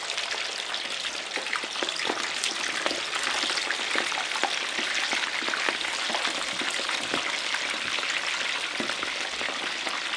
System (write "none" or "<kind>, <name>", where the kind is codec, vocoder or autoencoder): none